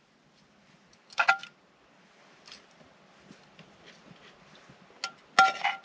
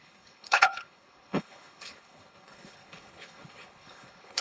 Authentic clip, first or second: first